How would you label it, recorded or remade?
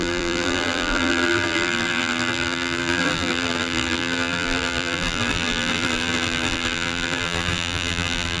remade